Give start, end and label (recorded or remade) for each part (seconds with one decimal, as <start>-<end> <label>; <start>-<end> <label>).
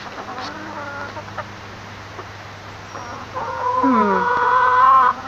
0.0-3.1 recorded; 3.1-5.3 remade